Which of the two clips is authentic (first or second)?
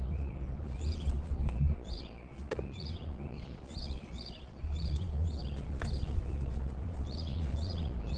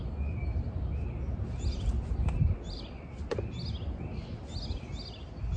second